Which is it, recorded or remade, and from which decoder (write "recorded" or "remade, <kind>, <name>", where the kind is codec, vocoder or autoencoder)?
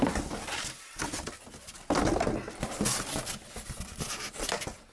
recorded